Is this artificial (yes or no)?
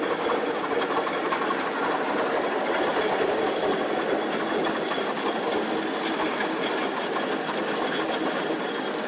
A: no